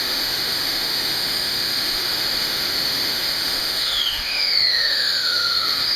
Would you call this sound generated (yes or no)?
yes